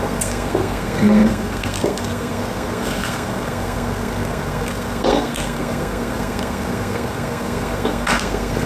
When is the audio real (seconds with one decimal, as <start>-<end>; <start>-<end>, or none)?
none